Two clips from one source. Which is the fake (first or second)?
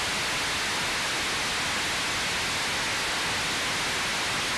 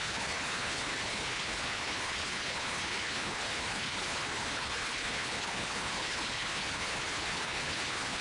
second